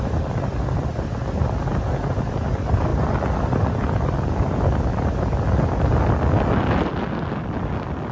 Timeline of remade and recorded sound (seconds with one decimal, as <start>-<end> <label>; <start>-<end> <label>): 0.0-8.1 recorded